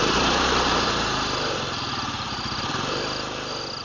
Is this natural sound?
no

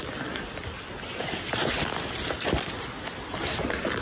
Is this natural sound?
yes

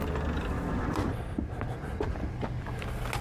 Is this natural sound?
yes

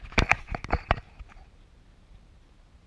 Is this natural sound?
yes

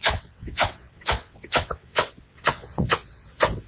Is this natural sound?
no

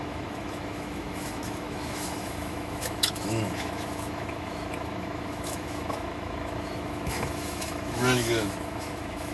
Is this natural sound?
no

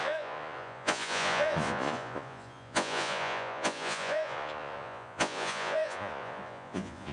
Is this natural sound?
no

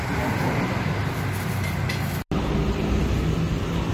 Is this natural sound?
yes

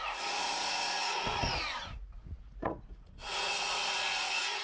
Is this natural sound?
no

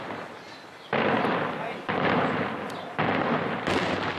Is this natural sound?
yes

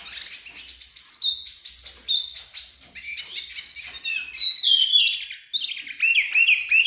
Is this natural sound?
yes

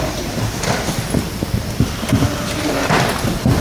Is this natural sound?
yes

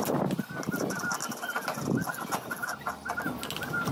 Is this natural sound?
yes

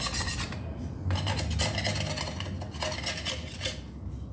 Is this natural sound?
yes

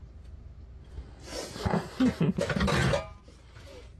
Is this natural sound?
yes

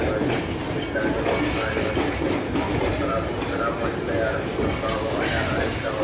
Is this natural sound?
yes